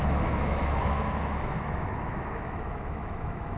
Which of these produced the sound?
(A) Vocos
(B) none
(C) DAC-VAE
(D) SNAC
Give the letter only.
C